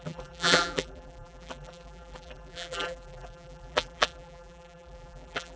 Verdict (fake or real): fake